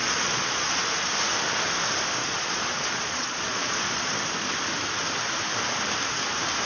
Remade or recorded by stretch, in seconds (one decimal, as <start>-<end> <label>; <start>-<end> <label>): 0.0-0.8 remade; 0.8-2.2 recorded; 2.2-4.1 remade; 4.1-6.7 recorded